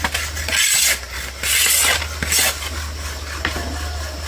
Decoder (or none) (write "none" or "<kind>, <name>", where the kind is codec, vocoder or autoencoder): none